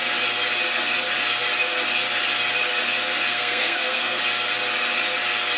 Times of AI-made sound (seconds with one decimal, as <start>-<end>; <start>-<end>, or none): 3.3-4.2